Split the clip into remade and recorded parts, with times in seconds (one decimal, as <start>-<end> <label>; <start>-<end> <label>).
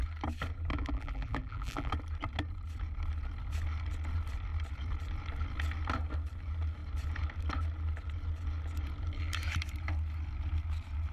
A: 0.0-0.7 recorded; 0.7-1.9 remade; 1.9-11.1 recorded